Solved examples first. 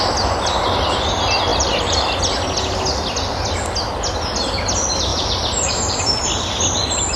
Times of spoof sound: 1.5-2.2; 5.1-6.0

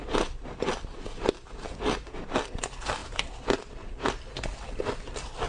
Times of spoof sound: 0.0-1.5; 3.0-3.7

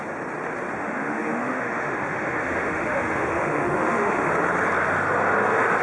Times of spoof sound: 0.8-4.3

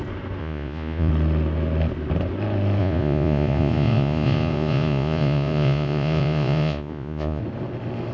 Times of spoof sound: 0.4-1.1; 2.8-7.4

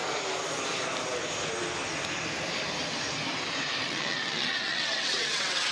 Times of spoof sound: 3.8-5.7

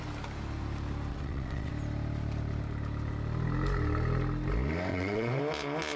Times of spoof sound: 1.1-1.7; 4.9-5.4